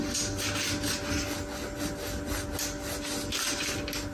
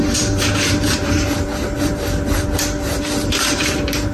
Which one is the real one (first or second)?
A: first